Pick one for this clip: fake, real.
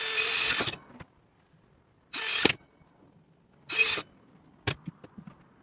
real